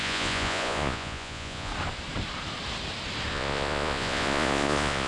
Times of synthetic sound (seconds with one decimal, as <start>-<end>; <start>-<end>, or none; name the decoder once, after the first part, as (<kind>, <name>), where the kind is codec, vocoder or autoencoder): 0.0-1.7 (vocoder, Vocos); 3.3-5.1